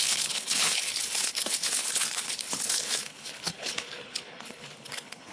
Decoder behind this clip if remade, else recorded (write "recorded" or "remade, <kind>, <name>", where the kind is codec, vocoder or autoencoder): remade, codec, HILCodec